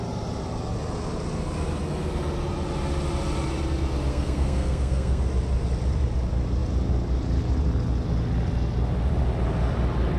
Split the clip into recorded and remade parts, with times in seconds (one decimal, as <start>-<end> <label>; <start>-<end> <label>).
0.0-4.1 recorded; 4.1-5.2 remade; 5.2-10.2 recorded